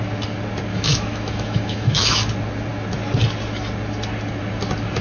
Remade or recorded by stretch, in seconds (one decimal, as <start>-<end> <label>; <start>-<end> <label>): 0.0-0.7 recorded; 0.7-2.3 remade; 2.3-5.0 recorded